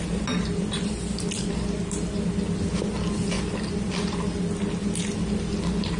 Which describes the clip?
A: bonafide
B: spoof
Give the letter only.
A